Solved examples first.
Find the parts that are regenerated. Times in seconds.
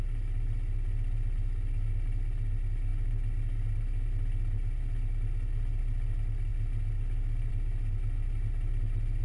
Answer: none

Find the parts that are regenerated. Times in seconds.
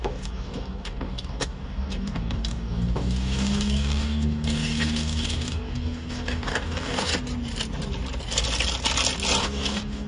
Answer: 0.0-7.1; 9.4-10.1